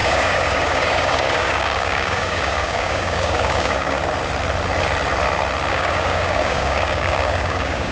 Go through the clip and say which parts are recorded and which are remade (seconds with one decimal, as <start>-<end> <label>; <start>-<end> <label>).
0.0-4.0 remade; 4.0-5.7 recorded; 5.7-7.9 remade